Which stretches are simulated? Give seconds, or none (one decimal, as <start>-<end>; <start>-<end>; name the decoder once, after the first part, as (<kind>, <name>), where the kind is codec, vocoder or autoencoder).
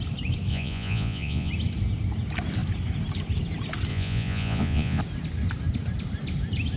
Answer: 0.5-1.5 (vocoder, Vocos); 3.9-5.0